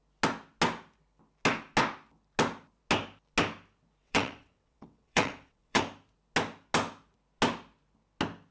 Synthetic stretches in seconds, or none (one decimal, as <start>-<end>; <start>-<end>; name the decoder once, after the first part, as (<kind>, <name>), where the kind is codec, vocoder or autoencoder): 4.0-5.8 (vocoder, WaveNeXt)